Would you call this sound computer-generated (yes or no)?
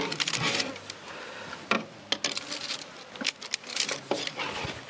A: no